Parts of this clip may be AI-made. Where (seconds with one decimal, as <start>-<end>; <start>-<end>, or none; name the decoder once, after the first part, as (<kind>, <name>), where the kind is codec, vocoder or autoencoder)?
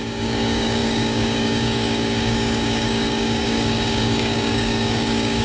0.0-5.4 (codec, DAC)